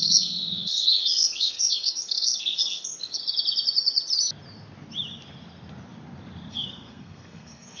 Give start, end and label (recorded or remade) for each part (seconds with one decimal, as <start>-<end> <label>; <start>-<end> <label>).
0.0-3.2 remade; 3.2-6.5 recorded; 6.5-7.8 remade